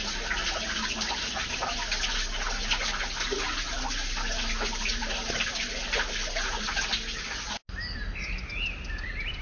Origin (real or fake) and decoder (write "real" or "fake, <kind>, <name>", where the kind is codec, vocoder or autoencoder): real